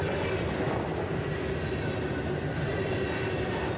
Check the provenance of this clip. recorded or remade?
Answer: recorded